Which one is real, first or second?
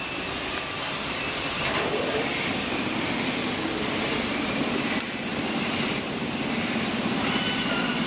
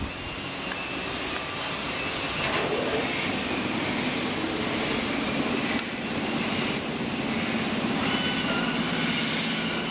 second